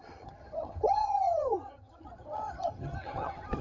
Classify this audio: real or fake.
fake